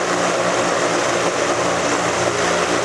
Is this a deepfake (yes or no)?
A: no